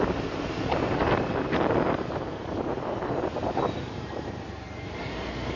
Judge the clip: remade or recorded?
remade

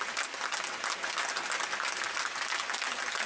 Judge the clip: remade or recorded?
remade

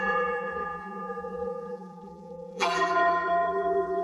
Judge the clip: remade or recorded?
remade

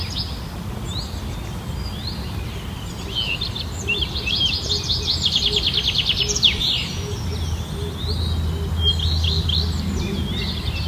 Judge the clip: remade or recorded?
recorded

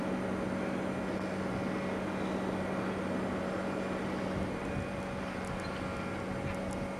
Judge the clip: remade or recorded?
recorded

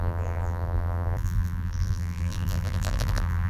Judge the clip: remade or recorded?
remade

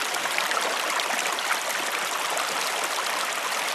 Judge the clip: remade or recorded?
recorded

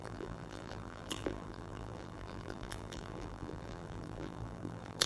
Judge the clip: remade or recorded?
remade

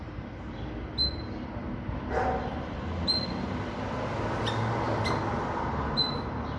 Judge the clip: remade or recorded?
recorded